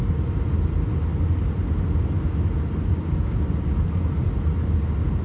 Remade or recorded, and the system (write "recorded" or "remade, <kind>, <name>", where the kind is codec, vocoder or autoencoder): recorded